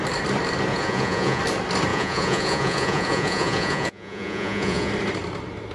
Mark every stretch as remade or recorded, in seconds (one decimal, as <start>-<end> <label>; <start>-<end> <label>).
0.0-0.7 recorded; 0.7-1.4 remade; 1.4-1.9 recorded; 1.9-4.9 remade; 4.9-5.7 recorded